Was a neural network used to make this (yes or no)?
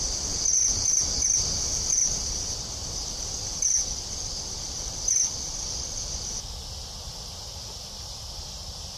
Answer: no